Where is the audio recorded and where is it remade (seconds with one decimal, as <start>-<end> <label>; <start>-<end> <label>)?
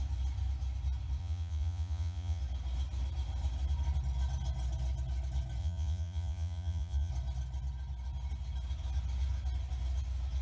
0.0-1.2 recorded; 1.2-2.4 remade; 2.4-5.6 recorded; 5.6-7.1 remade; 7.1-10.4 recorded